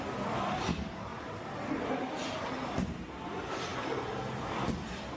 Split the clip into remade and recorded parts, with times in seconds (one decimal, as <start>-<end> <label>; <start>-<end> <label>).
0.0-1.1 recorded; 1.1-3.1 remade; 3.1-5.2 recorded